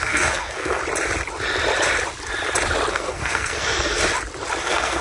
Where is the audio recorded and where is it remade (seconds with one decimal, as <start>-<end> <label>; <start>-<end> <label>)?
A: 0.0-0.8 remade; 0.8-2.9 recorded; 2.9-4.0 remade; 4.0-4.6 recorded; 4.6-5.0 remade